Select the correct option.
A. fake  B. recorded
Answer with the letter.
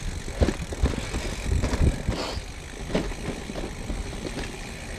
B